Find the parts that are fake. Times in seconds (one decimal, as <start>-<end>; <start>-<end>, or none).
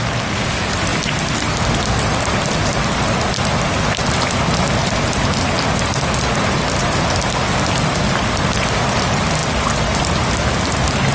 none